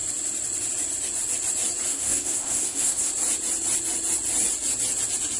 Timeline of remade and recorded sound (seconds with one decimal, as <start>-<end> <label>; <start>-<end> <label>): 0.0-1.9 recorded; 1.9-3.1 remade; 3.1-5.4 recorded